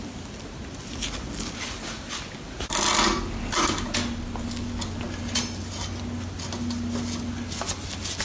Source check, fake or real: real